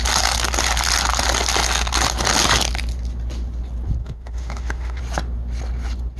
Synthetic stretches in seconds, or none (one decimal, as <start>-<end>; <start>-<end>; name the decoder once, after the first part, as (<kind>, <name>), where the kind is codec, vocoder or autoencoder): 4.0-5.0 (autoencoder, DAC-VAE)